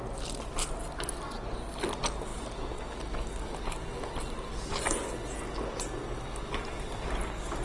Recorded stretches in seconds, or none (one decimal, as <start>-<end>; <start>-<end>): 0.0-7.6